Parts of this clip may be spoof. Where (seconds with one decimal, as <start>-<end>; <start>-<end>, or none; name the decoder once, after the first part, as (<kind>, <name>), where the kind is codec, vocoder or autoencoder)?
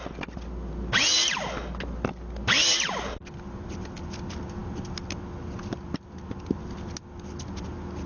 none